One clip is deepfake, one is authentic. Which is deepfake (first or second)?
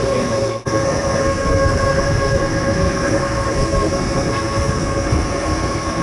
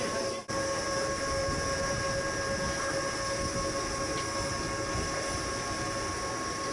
first